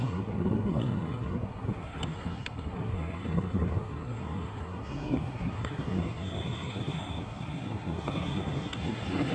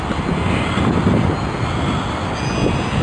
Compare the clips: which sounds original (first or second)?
second